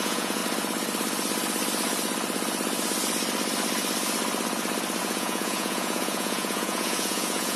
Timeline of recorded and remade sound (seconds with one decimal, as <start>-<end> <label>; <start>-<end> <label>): 0.0-0.4 remade; 0.4-5.0 recorded; 5.0-7.6 remade